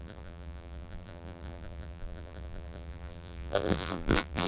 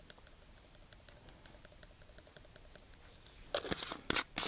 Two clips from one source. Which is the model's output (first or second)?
first